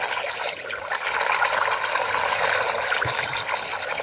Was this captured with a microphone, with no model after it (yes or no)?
yes